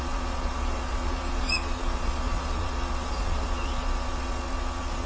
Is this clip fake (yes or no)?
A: yes